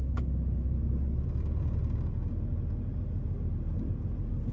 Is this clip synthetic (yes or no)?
no